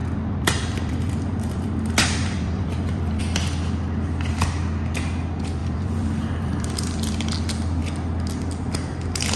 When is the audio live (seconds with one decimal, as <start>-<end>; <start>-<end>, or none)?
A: 3.2-5.6; 7.1-9.4